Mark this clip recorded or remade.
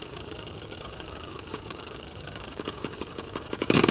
remade